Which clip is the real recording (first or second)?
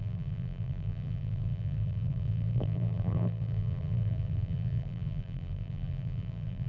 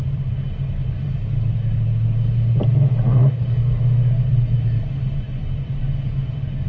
second